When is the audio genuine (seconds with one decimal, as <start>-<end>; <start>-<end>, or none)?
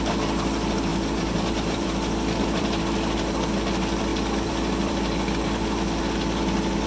0.0-0.9; 2.8-4.1; 6.0-6.9